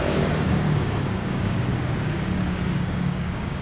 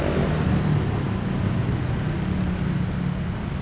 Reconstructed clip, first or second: first